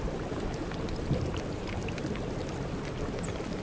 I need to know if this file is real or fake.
real